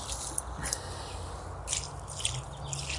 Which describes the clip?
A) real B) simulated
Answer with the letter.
A